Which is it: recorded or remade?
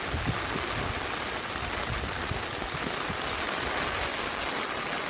recorded